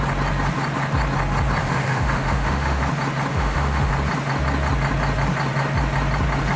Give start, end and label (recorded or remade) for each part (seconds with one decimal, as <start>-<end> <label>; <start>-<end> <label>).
0.0-1.6 recorded; 1.6-2.8 remade; 2.8-3.3 recorded; 3.3-3.9 remade; 3.9-6.6 recorded